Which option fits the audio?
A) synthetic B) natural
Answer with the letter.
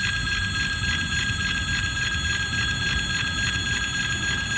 B